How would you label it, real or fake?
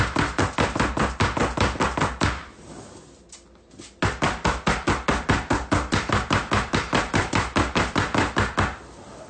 real